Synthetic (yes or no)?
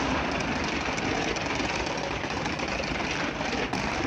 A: yes